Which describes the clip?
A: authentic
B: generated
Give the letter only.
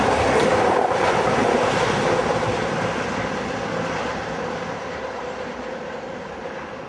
A